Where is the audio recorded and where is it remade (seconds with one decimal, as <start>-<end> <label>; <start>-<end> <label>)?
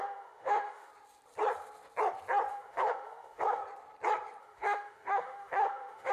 0.0-0.9 remade; 0.9-2.5 recorded; 2.5-3.6 remade; 3.6-4.4 recorded; 4.4-6.1 remade